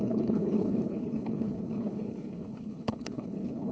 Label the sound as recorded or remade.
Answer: remade